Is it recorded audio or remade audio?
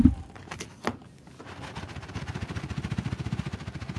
recorded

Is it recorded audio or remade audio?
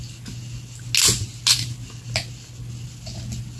recorded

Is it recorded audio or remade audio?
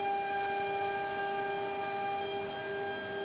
recorded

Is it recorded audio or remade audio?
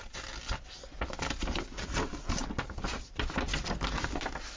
recorded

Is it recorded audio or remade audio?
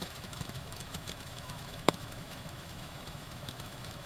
remade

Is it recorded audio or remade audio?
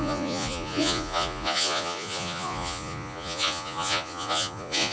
remade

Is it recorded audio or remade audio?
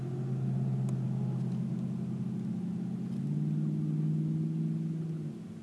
recorded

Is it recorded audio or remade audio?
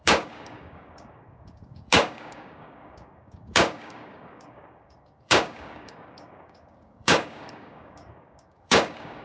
remade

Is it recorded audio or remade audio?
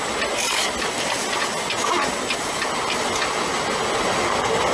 recorded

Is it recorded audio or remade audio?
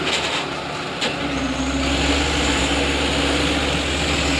recorded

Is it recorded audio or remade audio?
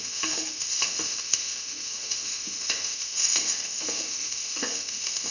remade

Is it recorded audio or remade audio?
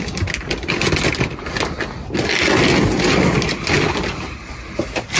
recorded